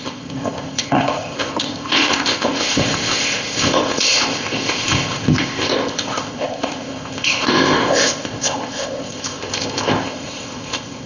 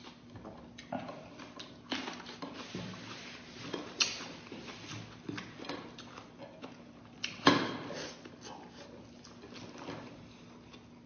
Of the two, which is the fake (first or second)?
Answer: first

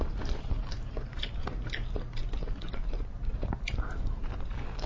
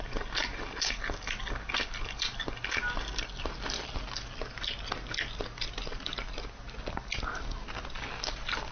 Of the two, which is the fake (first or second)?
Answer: first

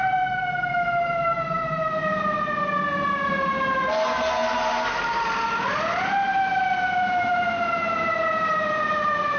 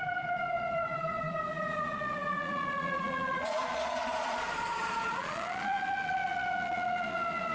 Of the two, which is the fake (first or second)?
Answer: second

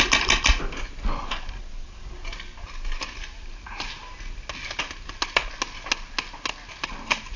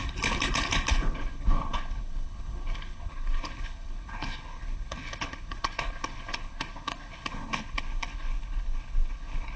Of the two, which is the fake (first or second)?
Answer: second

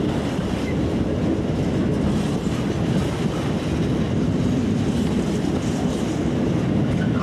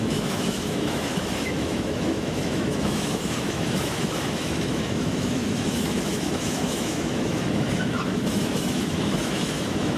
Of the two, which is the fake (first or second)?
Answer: second